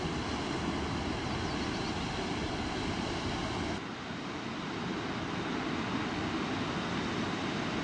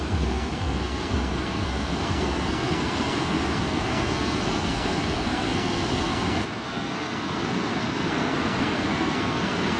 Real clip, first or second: first